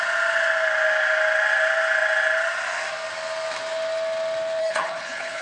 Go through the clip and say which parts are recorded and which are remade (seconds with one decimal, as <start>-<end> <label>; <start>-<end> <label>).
0.0-4.6 recorded; 4.6-5.4 remade